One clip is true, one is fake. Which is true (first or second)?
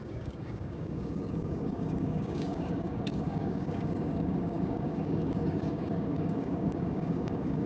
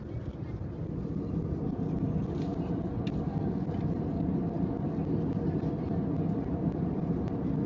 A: second